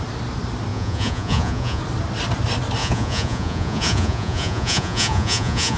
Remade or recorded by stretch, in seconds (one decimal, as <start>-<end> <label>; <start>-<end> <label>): 0.0-0.7 recorded; 0.7-1.8 remade; 1.8-2.8 recorded; 2.8-5.8 remade